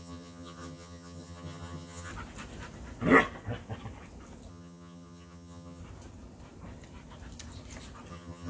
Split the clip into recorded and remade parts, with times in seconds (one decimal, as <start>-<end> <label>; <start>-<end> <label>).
0.0-2.1 remade; 2.1-4.5 recorded; 4.5-5.8 remade; 5.8-8.1 recorded; 8.1-8.5 remade